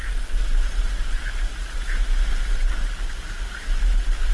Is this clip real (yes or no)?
yes